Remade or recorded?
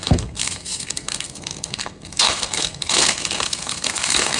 remade